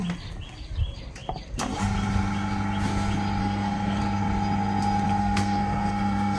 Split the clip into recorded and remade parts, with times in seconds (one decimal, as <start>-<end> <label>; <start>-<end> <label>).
0.0-3.4 recorded; 3.4-4.0 remade; 4.0-5.2 recorded; 5.2-6.4 remade